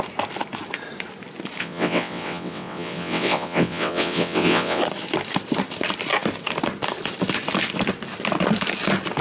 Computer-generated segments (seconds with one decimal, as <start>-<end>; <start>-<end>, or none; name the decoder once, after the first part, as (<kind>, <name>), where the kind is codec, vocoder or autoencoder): 1.6-4.8 (vocoder, WaveNeXt)